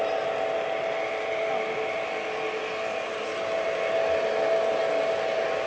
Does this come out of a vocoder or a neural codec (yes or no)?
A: no